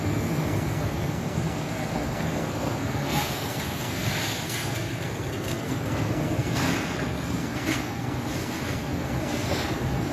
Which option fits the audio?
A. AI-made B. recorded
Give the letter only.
A